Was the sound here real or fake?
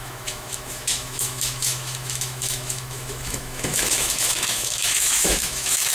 fake